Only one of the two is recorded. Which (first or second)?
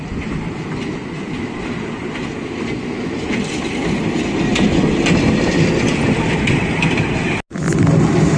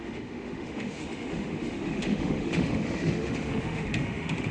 first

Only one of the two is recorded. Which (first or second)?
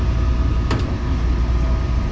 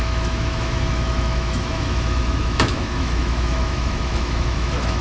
first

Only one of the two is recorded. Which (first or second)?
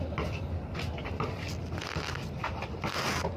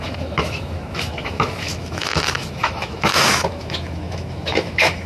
first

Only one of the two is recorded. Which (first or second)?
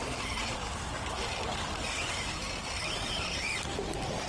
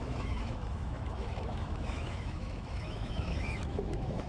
first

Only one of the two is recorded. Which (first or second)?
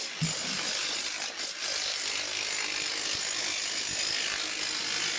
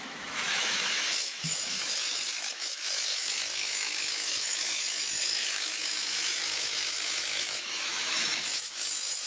first